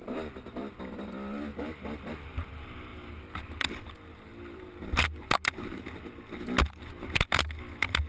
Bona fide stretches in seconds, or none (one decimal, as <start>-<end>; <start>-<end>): 0.0-8.1